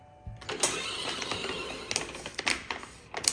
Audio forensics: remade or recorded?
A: recorded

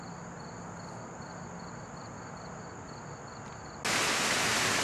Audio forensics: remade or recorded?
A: recorded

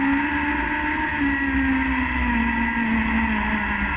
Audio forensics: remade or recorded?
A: recorded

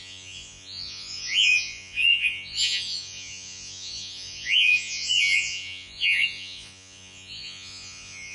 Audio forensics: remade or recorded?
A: remade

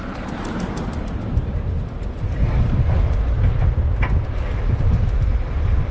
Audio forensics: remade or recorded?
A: recorded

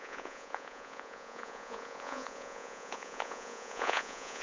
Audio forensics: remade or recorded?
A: remade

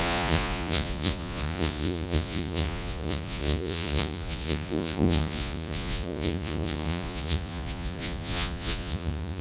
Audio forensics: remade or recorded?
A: remade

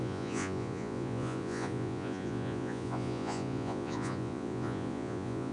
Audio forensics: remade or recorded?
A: remade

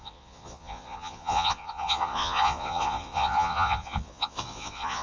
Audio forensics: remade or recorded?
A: remade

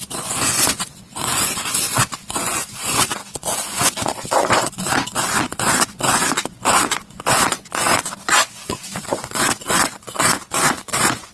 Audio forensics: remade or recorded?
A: remade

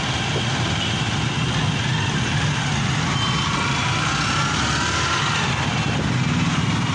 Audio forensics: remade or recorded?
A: recorded